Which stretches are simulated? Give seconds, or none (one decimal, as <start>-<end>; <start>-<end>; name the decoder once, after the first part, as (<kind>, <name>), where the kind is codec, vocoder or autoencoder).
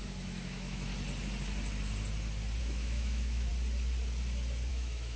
0.0-0.9 (autoencoder, DAC-VAE); 2.6-3.5; 4.7-5.2